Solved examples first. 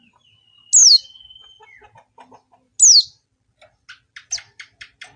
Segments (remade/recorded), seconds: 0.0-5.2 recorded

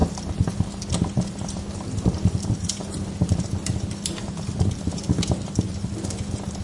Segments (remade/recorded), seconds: 0.0-6.6 remade

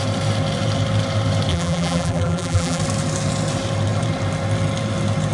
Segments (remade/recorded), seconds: 0.0-1.5 recorded; 1.5-2.8 remade; 2.8-5.3 recorded

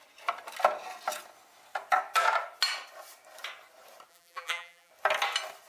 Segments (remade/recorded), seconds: 0.0-4.1 recorded; 4.1-4.9 remade; 4.9-5.7 recorded